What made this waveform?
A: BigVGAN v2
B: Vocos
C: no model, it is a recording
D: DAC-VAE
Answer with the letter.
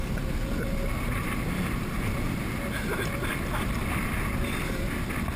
C